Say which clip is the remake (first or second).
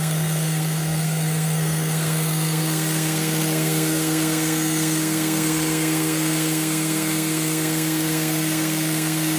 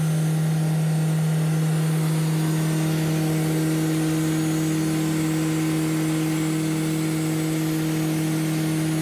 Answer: first